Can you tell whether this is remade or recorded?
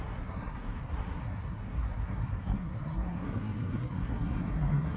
remade